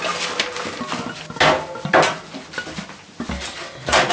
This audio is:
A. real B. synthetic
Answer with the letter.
A